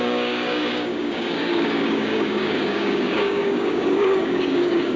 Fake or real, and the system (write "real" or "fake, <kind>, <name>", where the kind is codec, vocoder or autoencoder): fake, codec, DAC